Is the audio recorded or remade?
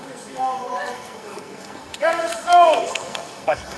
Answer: remade